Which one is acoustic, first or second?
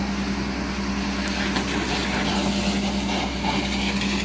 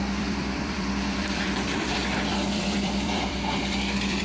first